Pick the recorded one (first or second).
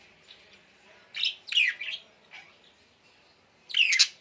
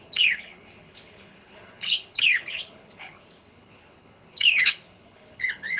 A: first